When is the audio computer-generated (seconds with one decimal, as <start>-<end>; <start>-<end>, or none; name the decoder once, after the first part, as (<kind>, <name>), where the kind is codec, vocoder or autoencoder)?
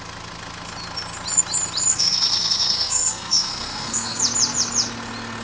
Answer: 1.9-4.2 (codec, SNAC)